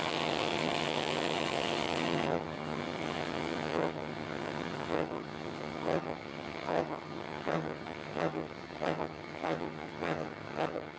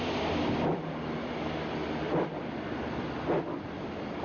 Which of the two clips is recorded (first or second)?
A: second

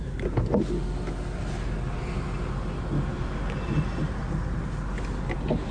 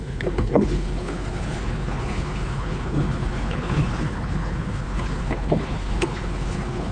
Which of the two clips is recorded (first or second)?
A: first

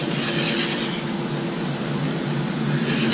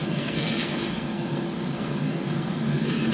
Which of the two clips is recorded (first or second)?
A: first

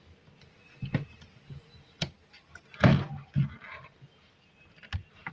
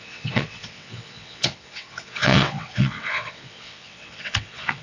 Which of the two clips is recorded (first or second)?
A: first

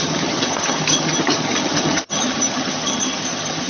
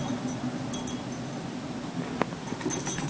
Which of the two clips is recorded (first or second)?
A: second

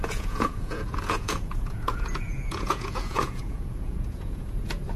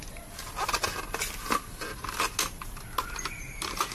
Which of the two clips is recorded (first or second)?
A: second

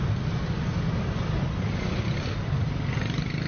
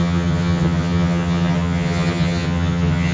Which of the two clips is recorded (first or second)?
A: first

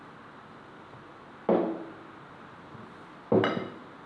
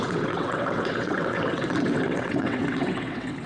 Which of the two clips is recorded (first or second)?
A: first